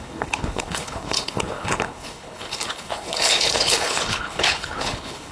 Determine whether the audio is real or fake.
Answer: fake